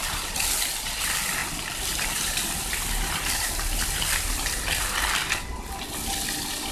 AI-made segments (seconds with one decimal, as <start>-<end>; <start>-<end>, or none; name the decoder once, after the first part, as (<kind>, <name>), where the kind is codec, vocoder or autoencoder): 1.4-4.6 (vocoder, BigVGAN v2)